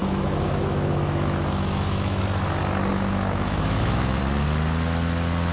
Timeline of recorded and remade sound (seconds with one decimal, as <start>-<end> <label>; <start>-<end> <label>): 0.0-2.2 remade; 2.2-2.9 recorded; 2.9-4.2 remade; 4.2-5.5 recorded